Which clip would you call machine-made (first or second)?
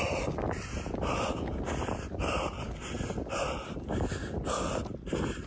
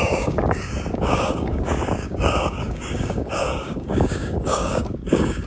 second